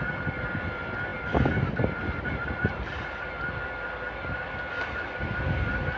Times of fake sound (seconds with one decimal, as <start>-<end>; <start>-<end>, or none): none